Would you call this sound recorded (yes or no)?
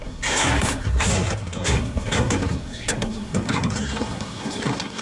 no